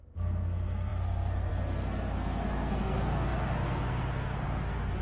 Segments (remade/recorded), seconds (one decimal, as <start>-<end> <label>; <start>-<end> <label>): 0.0-5.0 remade